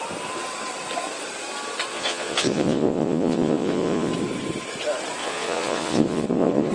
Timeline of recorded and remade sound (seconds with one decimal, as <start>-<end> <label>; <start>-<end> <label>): 0.0-1.9 recorded; 1.9-4.1 remade; 4.1-5.2 recorded; 5.2-6.7 remade